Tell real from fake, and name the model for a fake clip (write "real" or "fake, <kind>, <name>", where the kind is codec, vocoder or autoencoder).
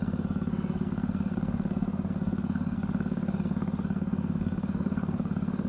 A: fake, codec, SNAC